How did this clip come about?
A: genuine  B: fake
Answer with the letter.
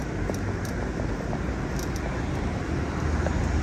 A